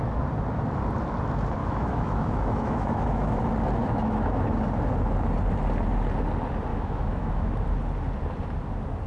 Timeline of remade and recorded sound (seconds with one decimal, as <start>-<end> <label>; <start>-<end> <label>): 0.0-1.6 recorded; 1.6-3.4 remade; 3.4-3.8 recorded; 3.8-4.5 remade; 4.5-6.7 recorded; 6.7-7.5 remade; 7.5-9.1 recorded